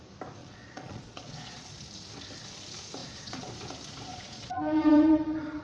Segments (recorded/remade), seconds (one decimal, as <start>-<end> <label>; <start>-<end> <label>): 0.0-0.4 recorded; 0.4-1.6 remade; 1.6-3.0 recorded; 3.0-3.5 remade; 3.5-4.1 recorded; 4.1-5.6 remade